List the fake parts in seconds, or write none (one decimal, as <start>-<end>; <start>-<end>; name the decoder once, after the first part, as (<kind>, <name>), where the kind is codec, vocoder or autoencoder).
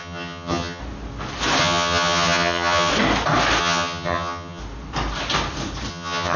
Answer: 0.0-0.8 (vocoder, HiFi-GAN); 1.6-2.9; 3.6-4.6; 5.9-6.4